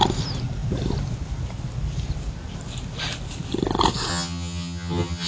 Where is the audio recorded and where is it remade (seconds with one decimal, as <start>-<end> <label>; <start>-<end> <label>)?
0.0-4.1 recorded; 4.1-5.3 remade